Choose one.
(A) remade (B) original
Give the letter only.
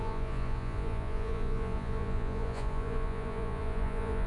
A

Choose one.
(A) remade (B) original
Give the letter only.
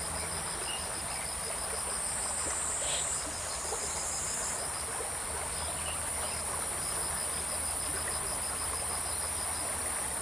B